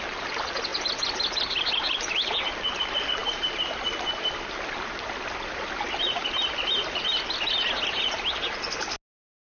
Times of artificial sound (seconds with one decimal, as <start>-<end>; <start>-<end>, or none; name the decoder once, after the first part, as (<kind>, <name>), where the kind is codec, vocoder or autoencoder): none